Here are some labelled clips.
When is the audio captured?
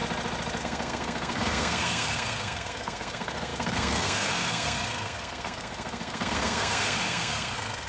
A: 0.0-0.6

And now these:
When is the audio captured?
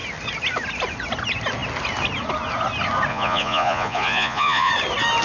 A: 0.0-3.1; 4.7-5.2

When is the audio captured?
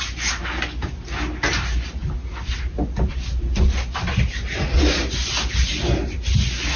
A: 0.0-6.8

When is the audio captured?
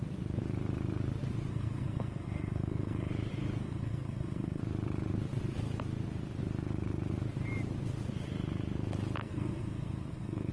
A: 0.0-1.5; 3.1-3.6; 4.6-9.2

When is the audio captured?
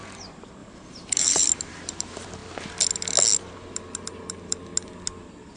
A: 2.4-4.3; 4.7-5.6